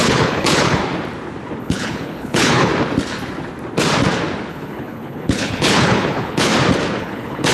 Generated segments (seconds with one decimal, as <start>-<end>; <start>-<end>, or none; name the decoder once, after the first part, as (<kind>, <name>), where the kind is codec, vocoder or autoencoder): 0.0-0.8 (codec, HILCodec); 1.6-2.7; 4.5-6.5; 7.0-7.5